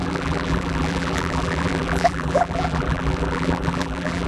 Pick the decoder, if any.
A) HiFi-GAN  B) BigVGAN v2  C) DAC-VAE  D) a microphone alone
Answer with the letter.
B